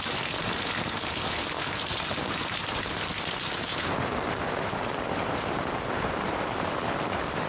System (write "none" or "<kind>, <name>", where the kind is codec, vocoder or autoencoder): vocoder, BigVGAN v2